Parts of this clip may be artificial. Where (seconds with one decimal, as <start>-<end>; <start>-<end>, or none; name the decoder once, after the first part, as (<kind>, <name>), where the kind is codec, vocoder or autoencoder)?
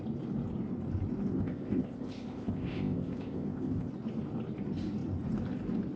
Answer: 1.3-3.9 (codec, ZipCodec)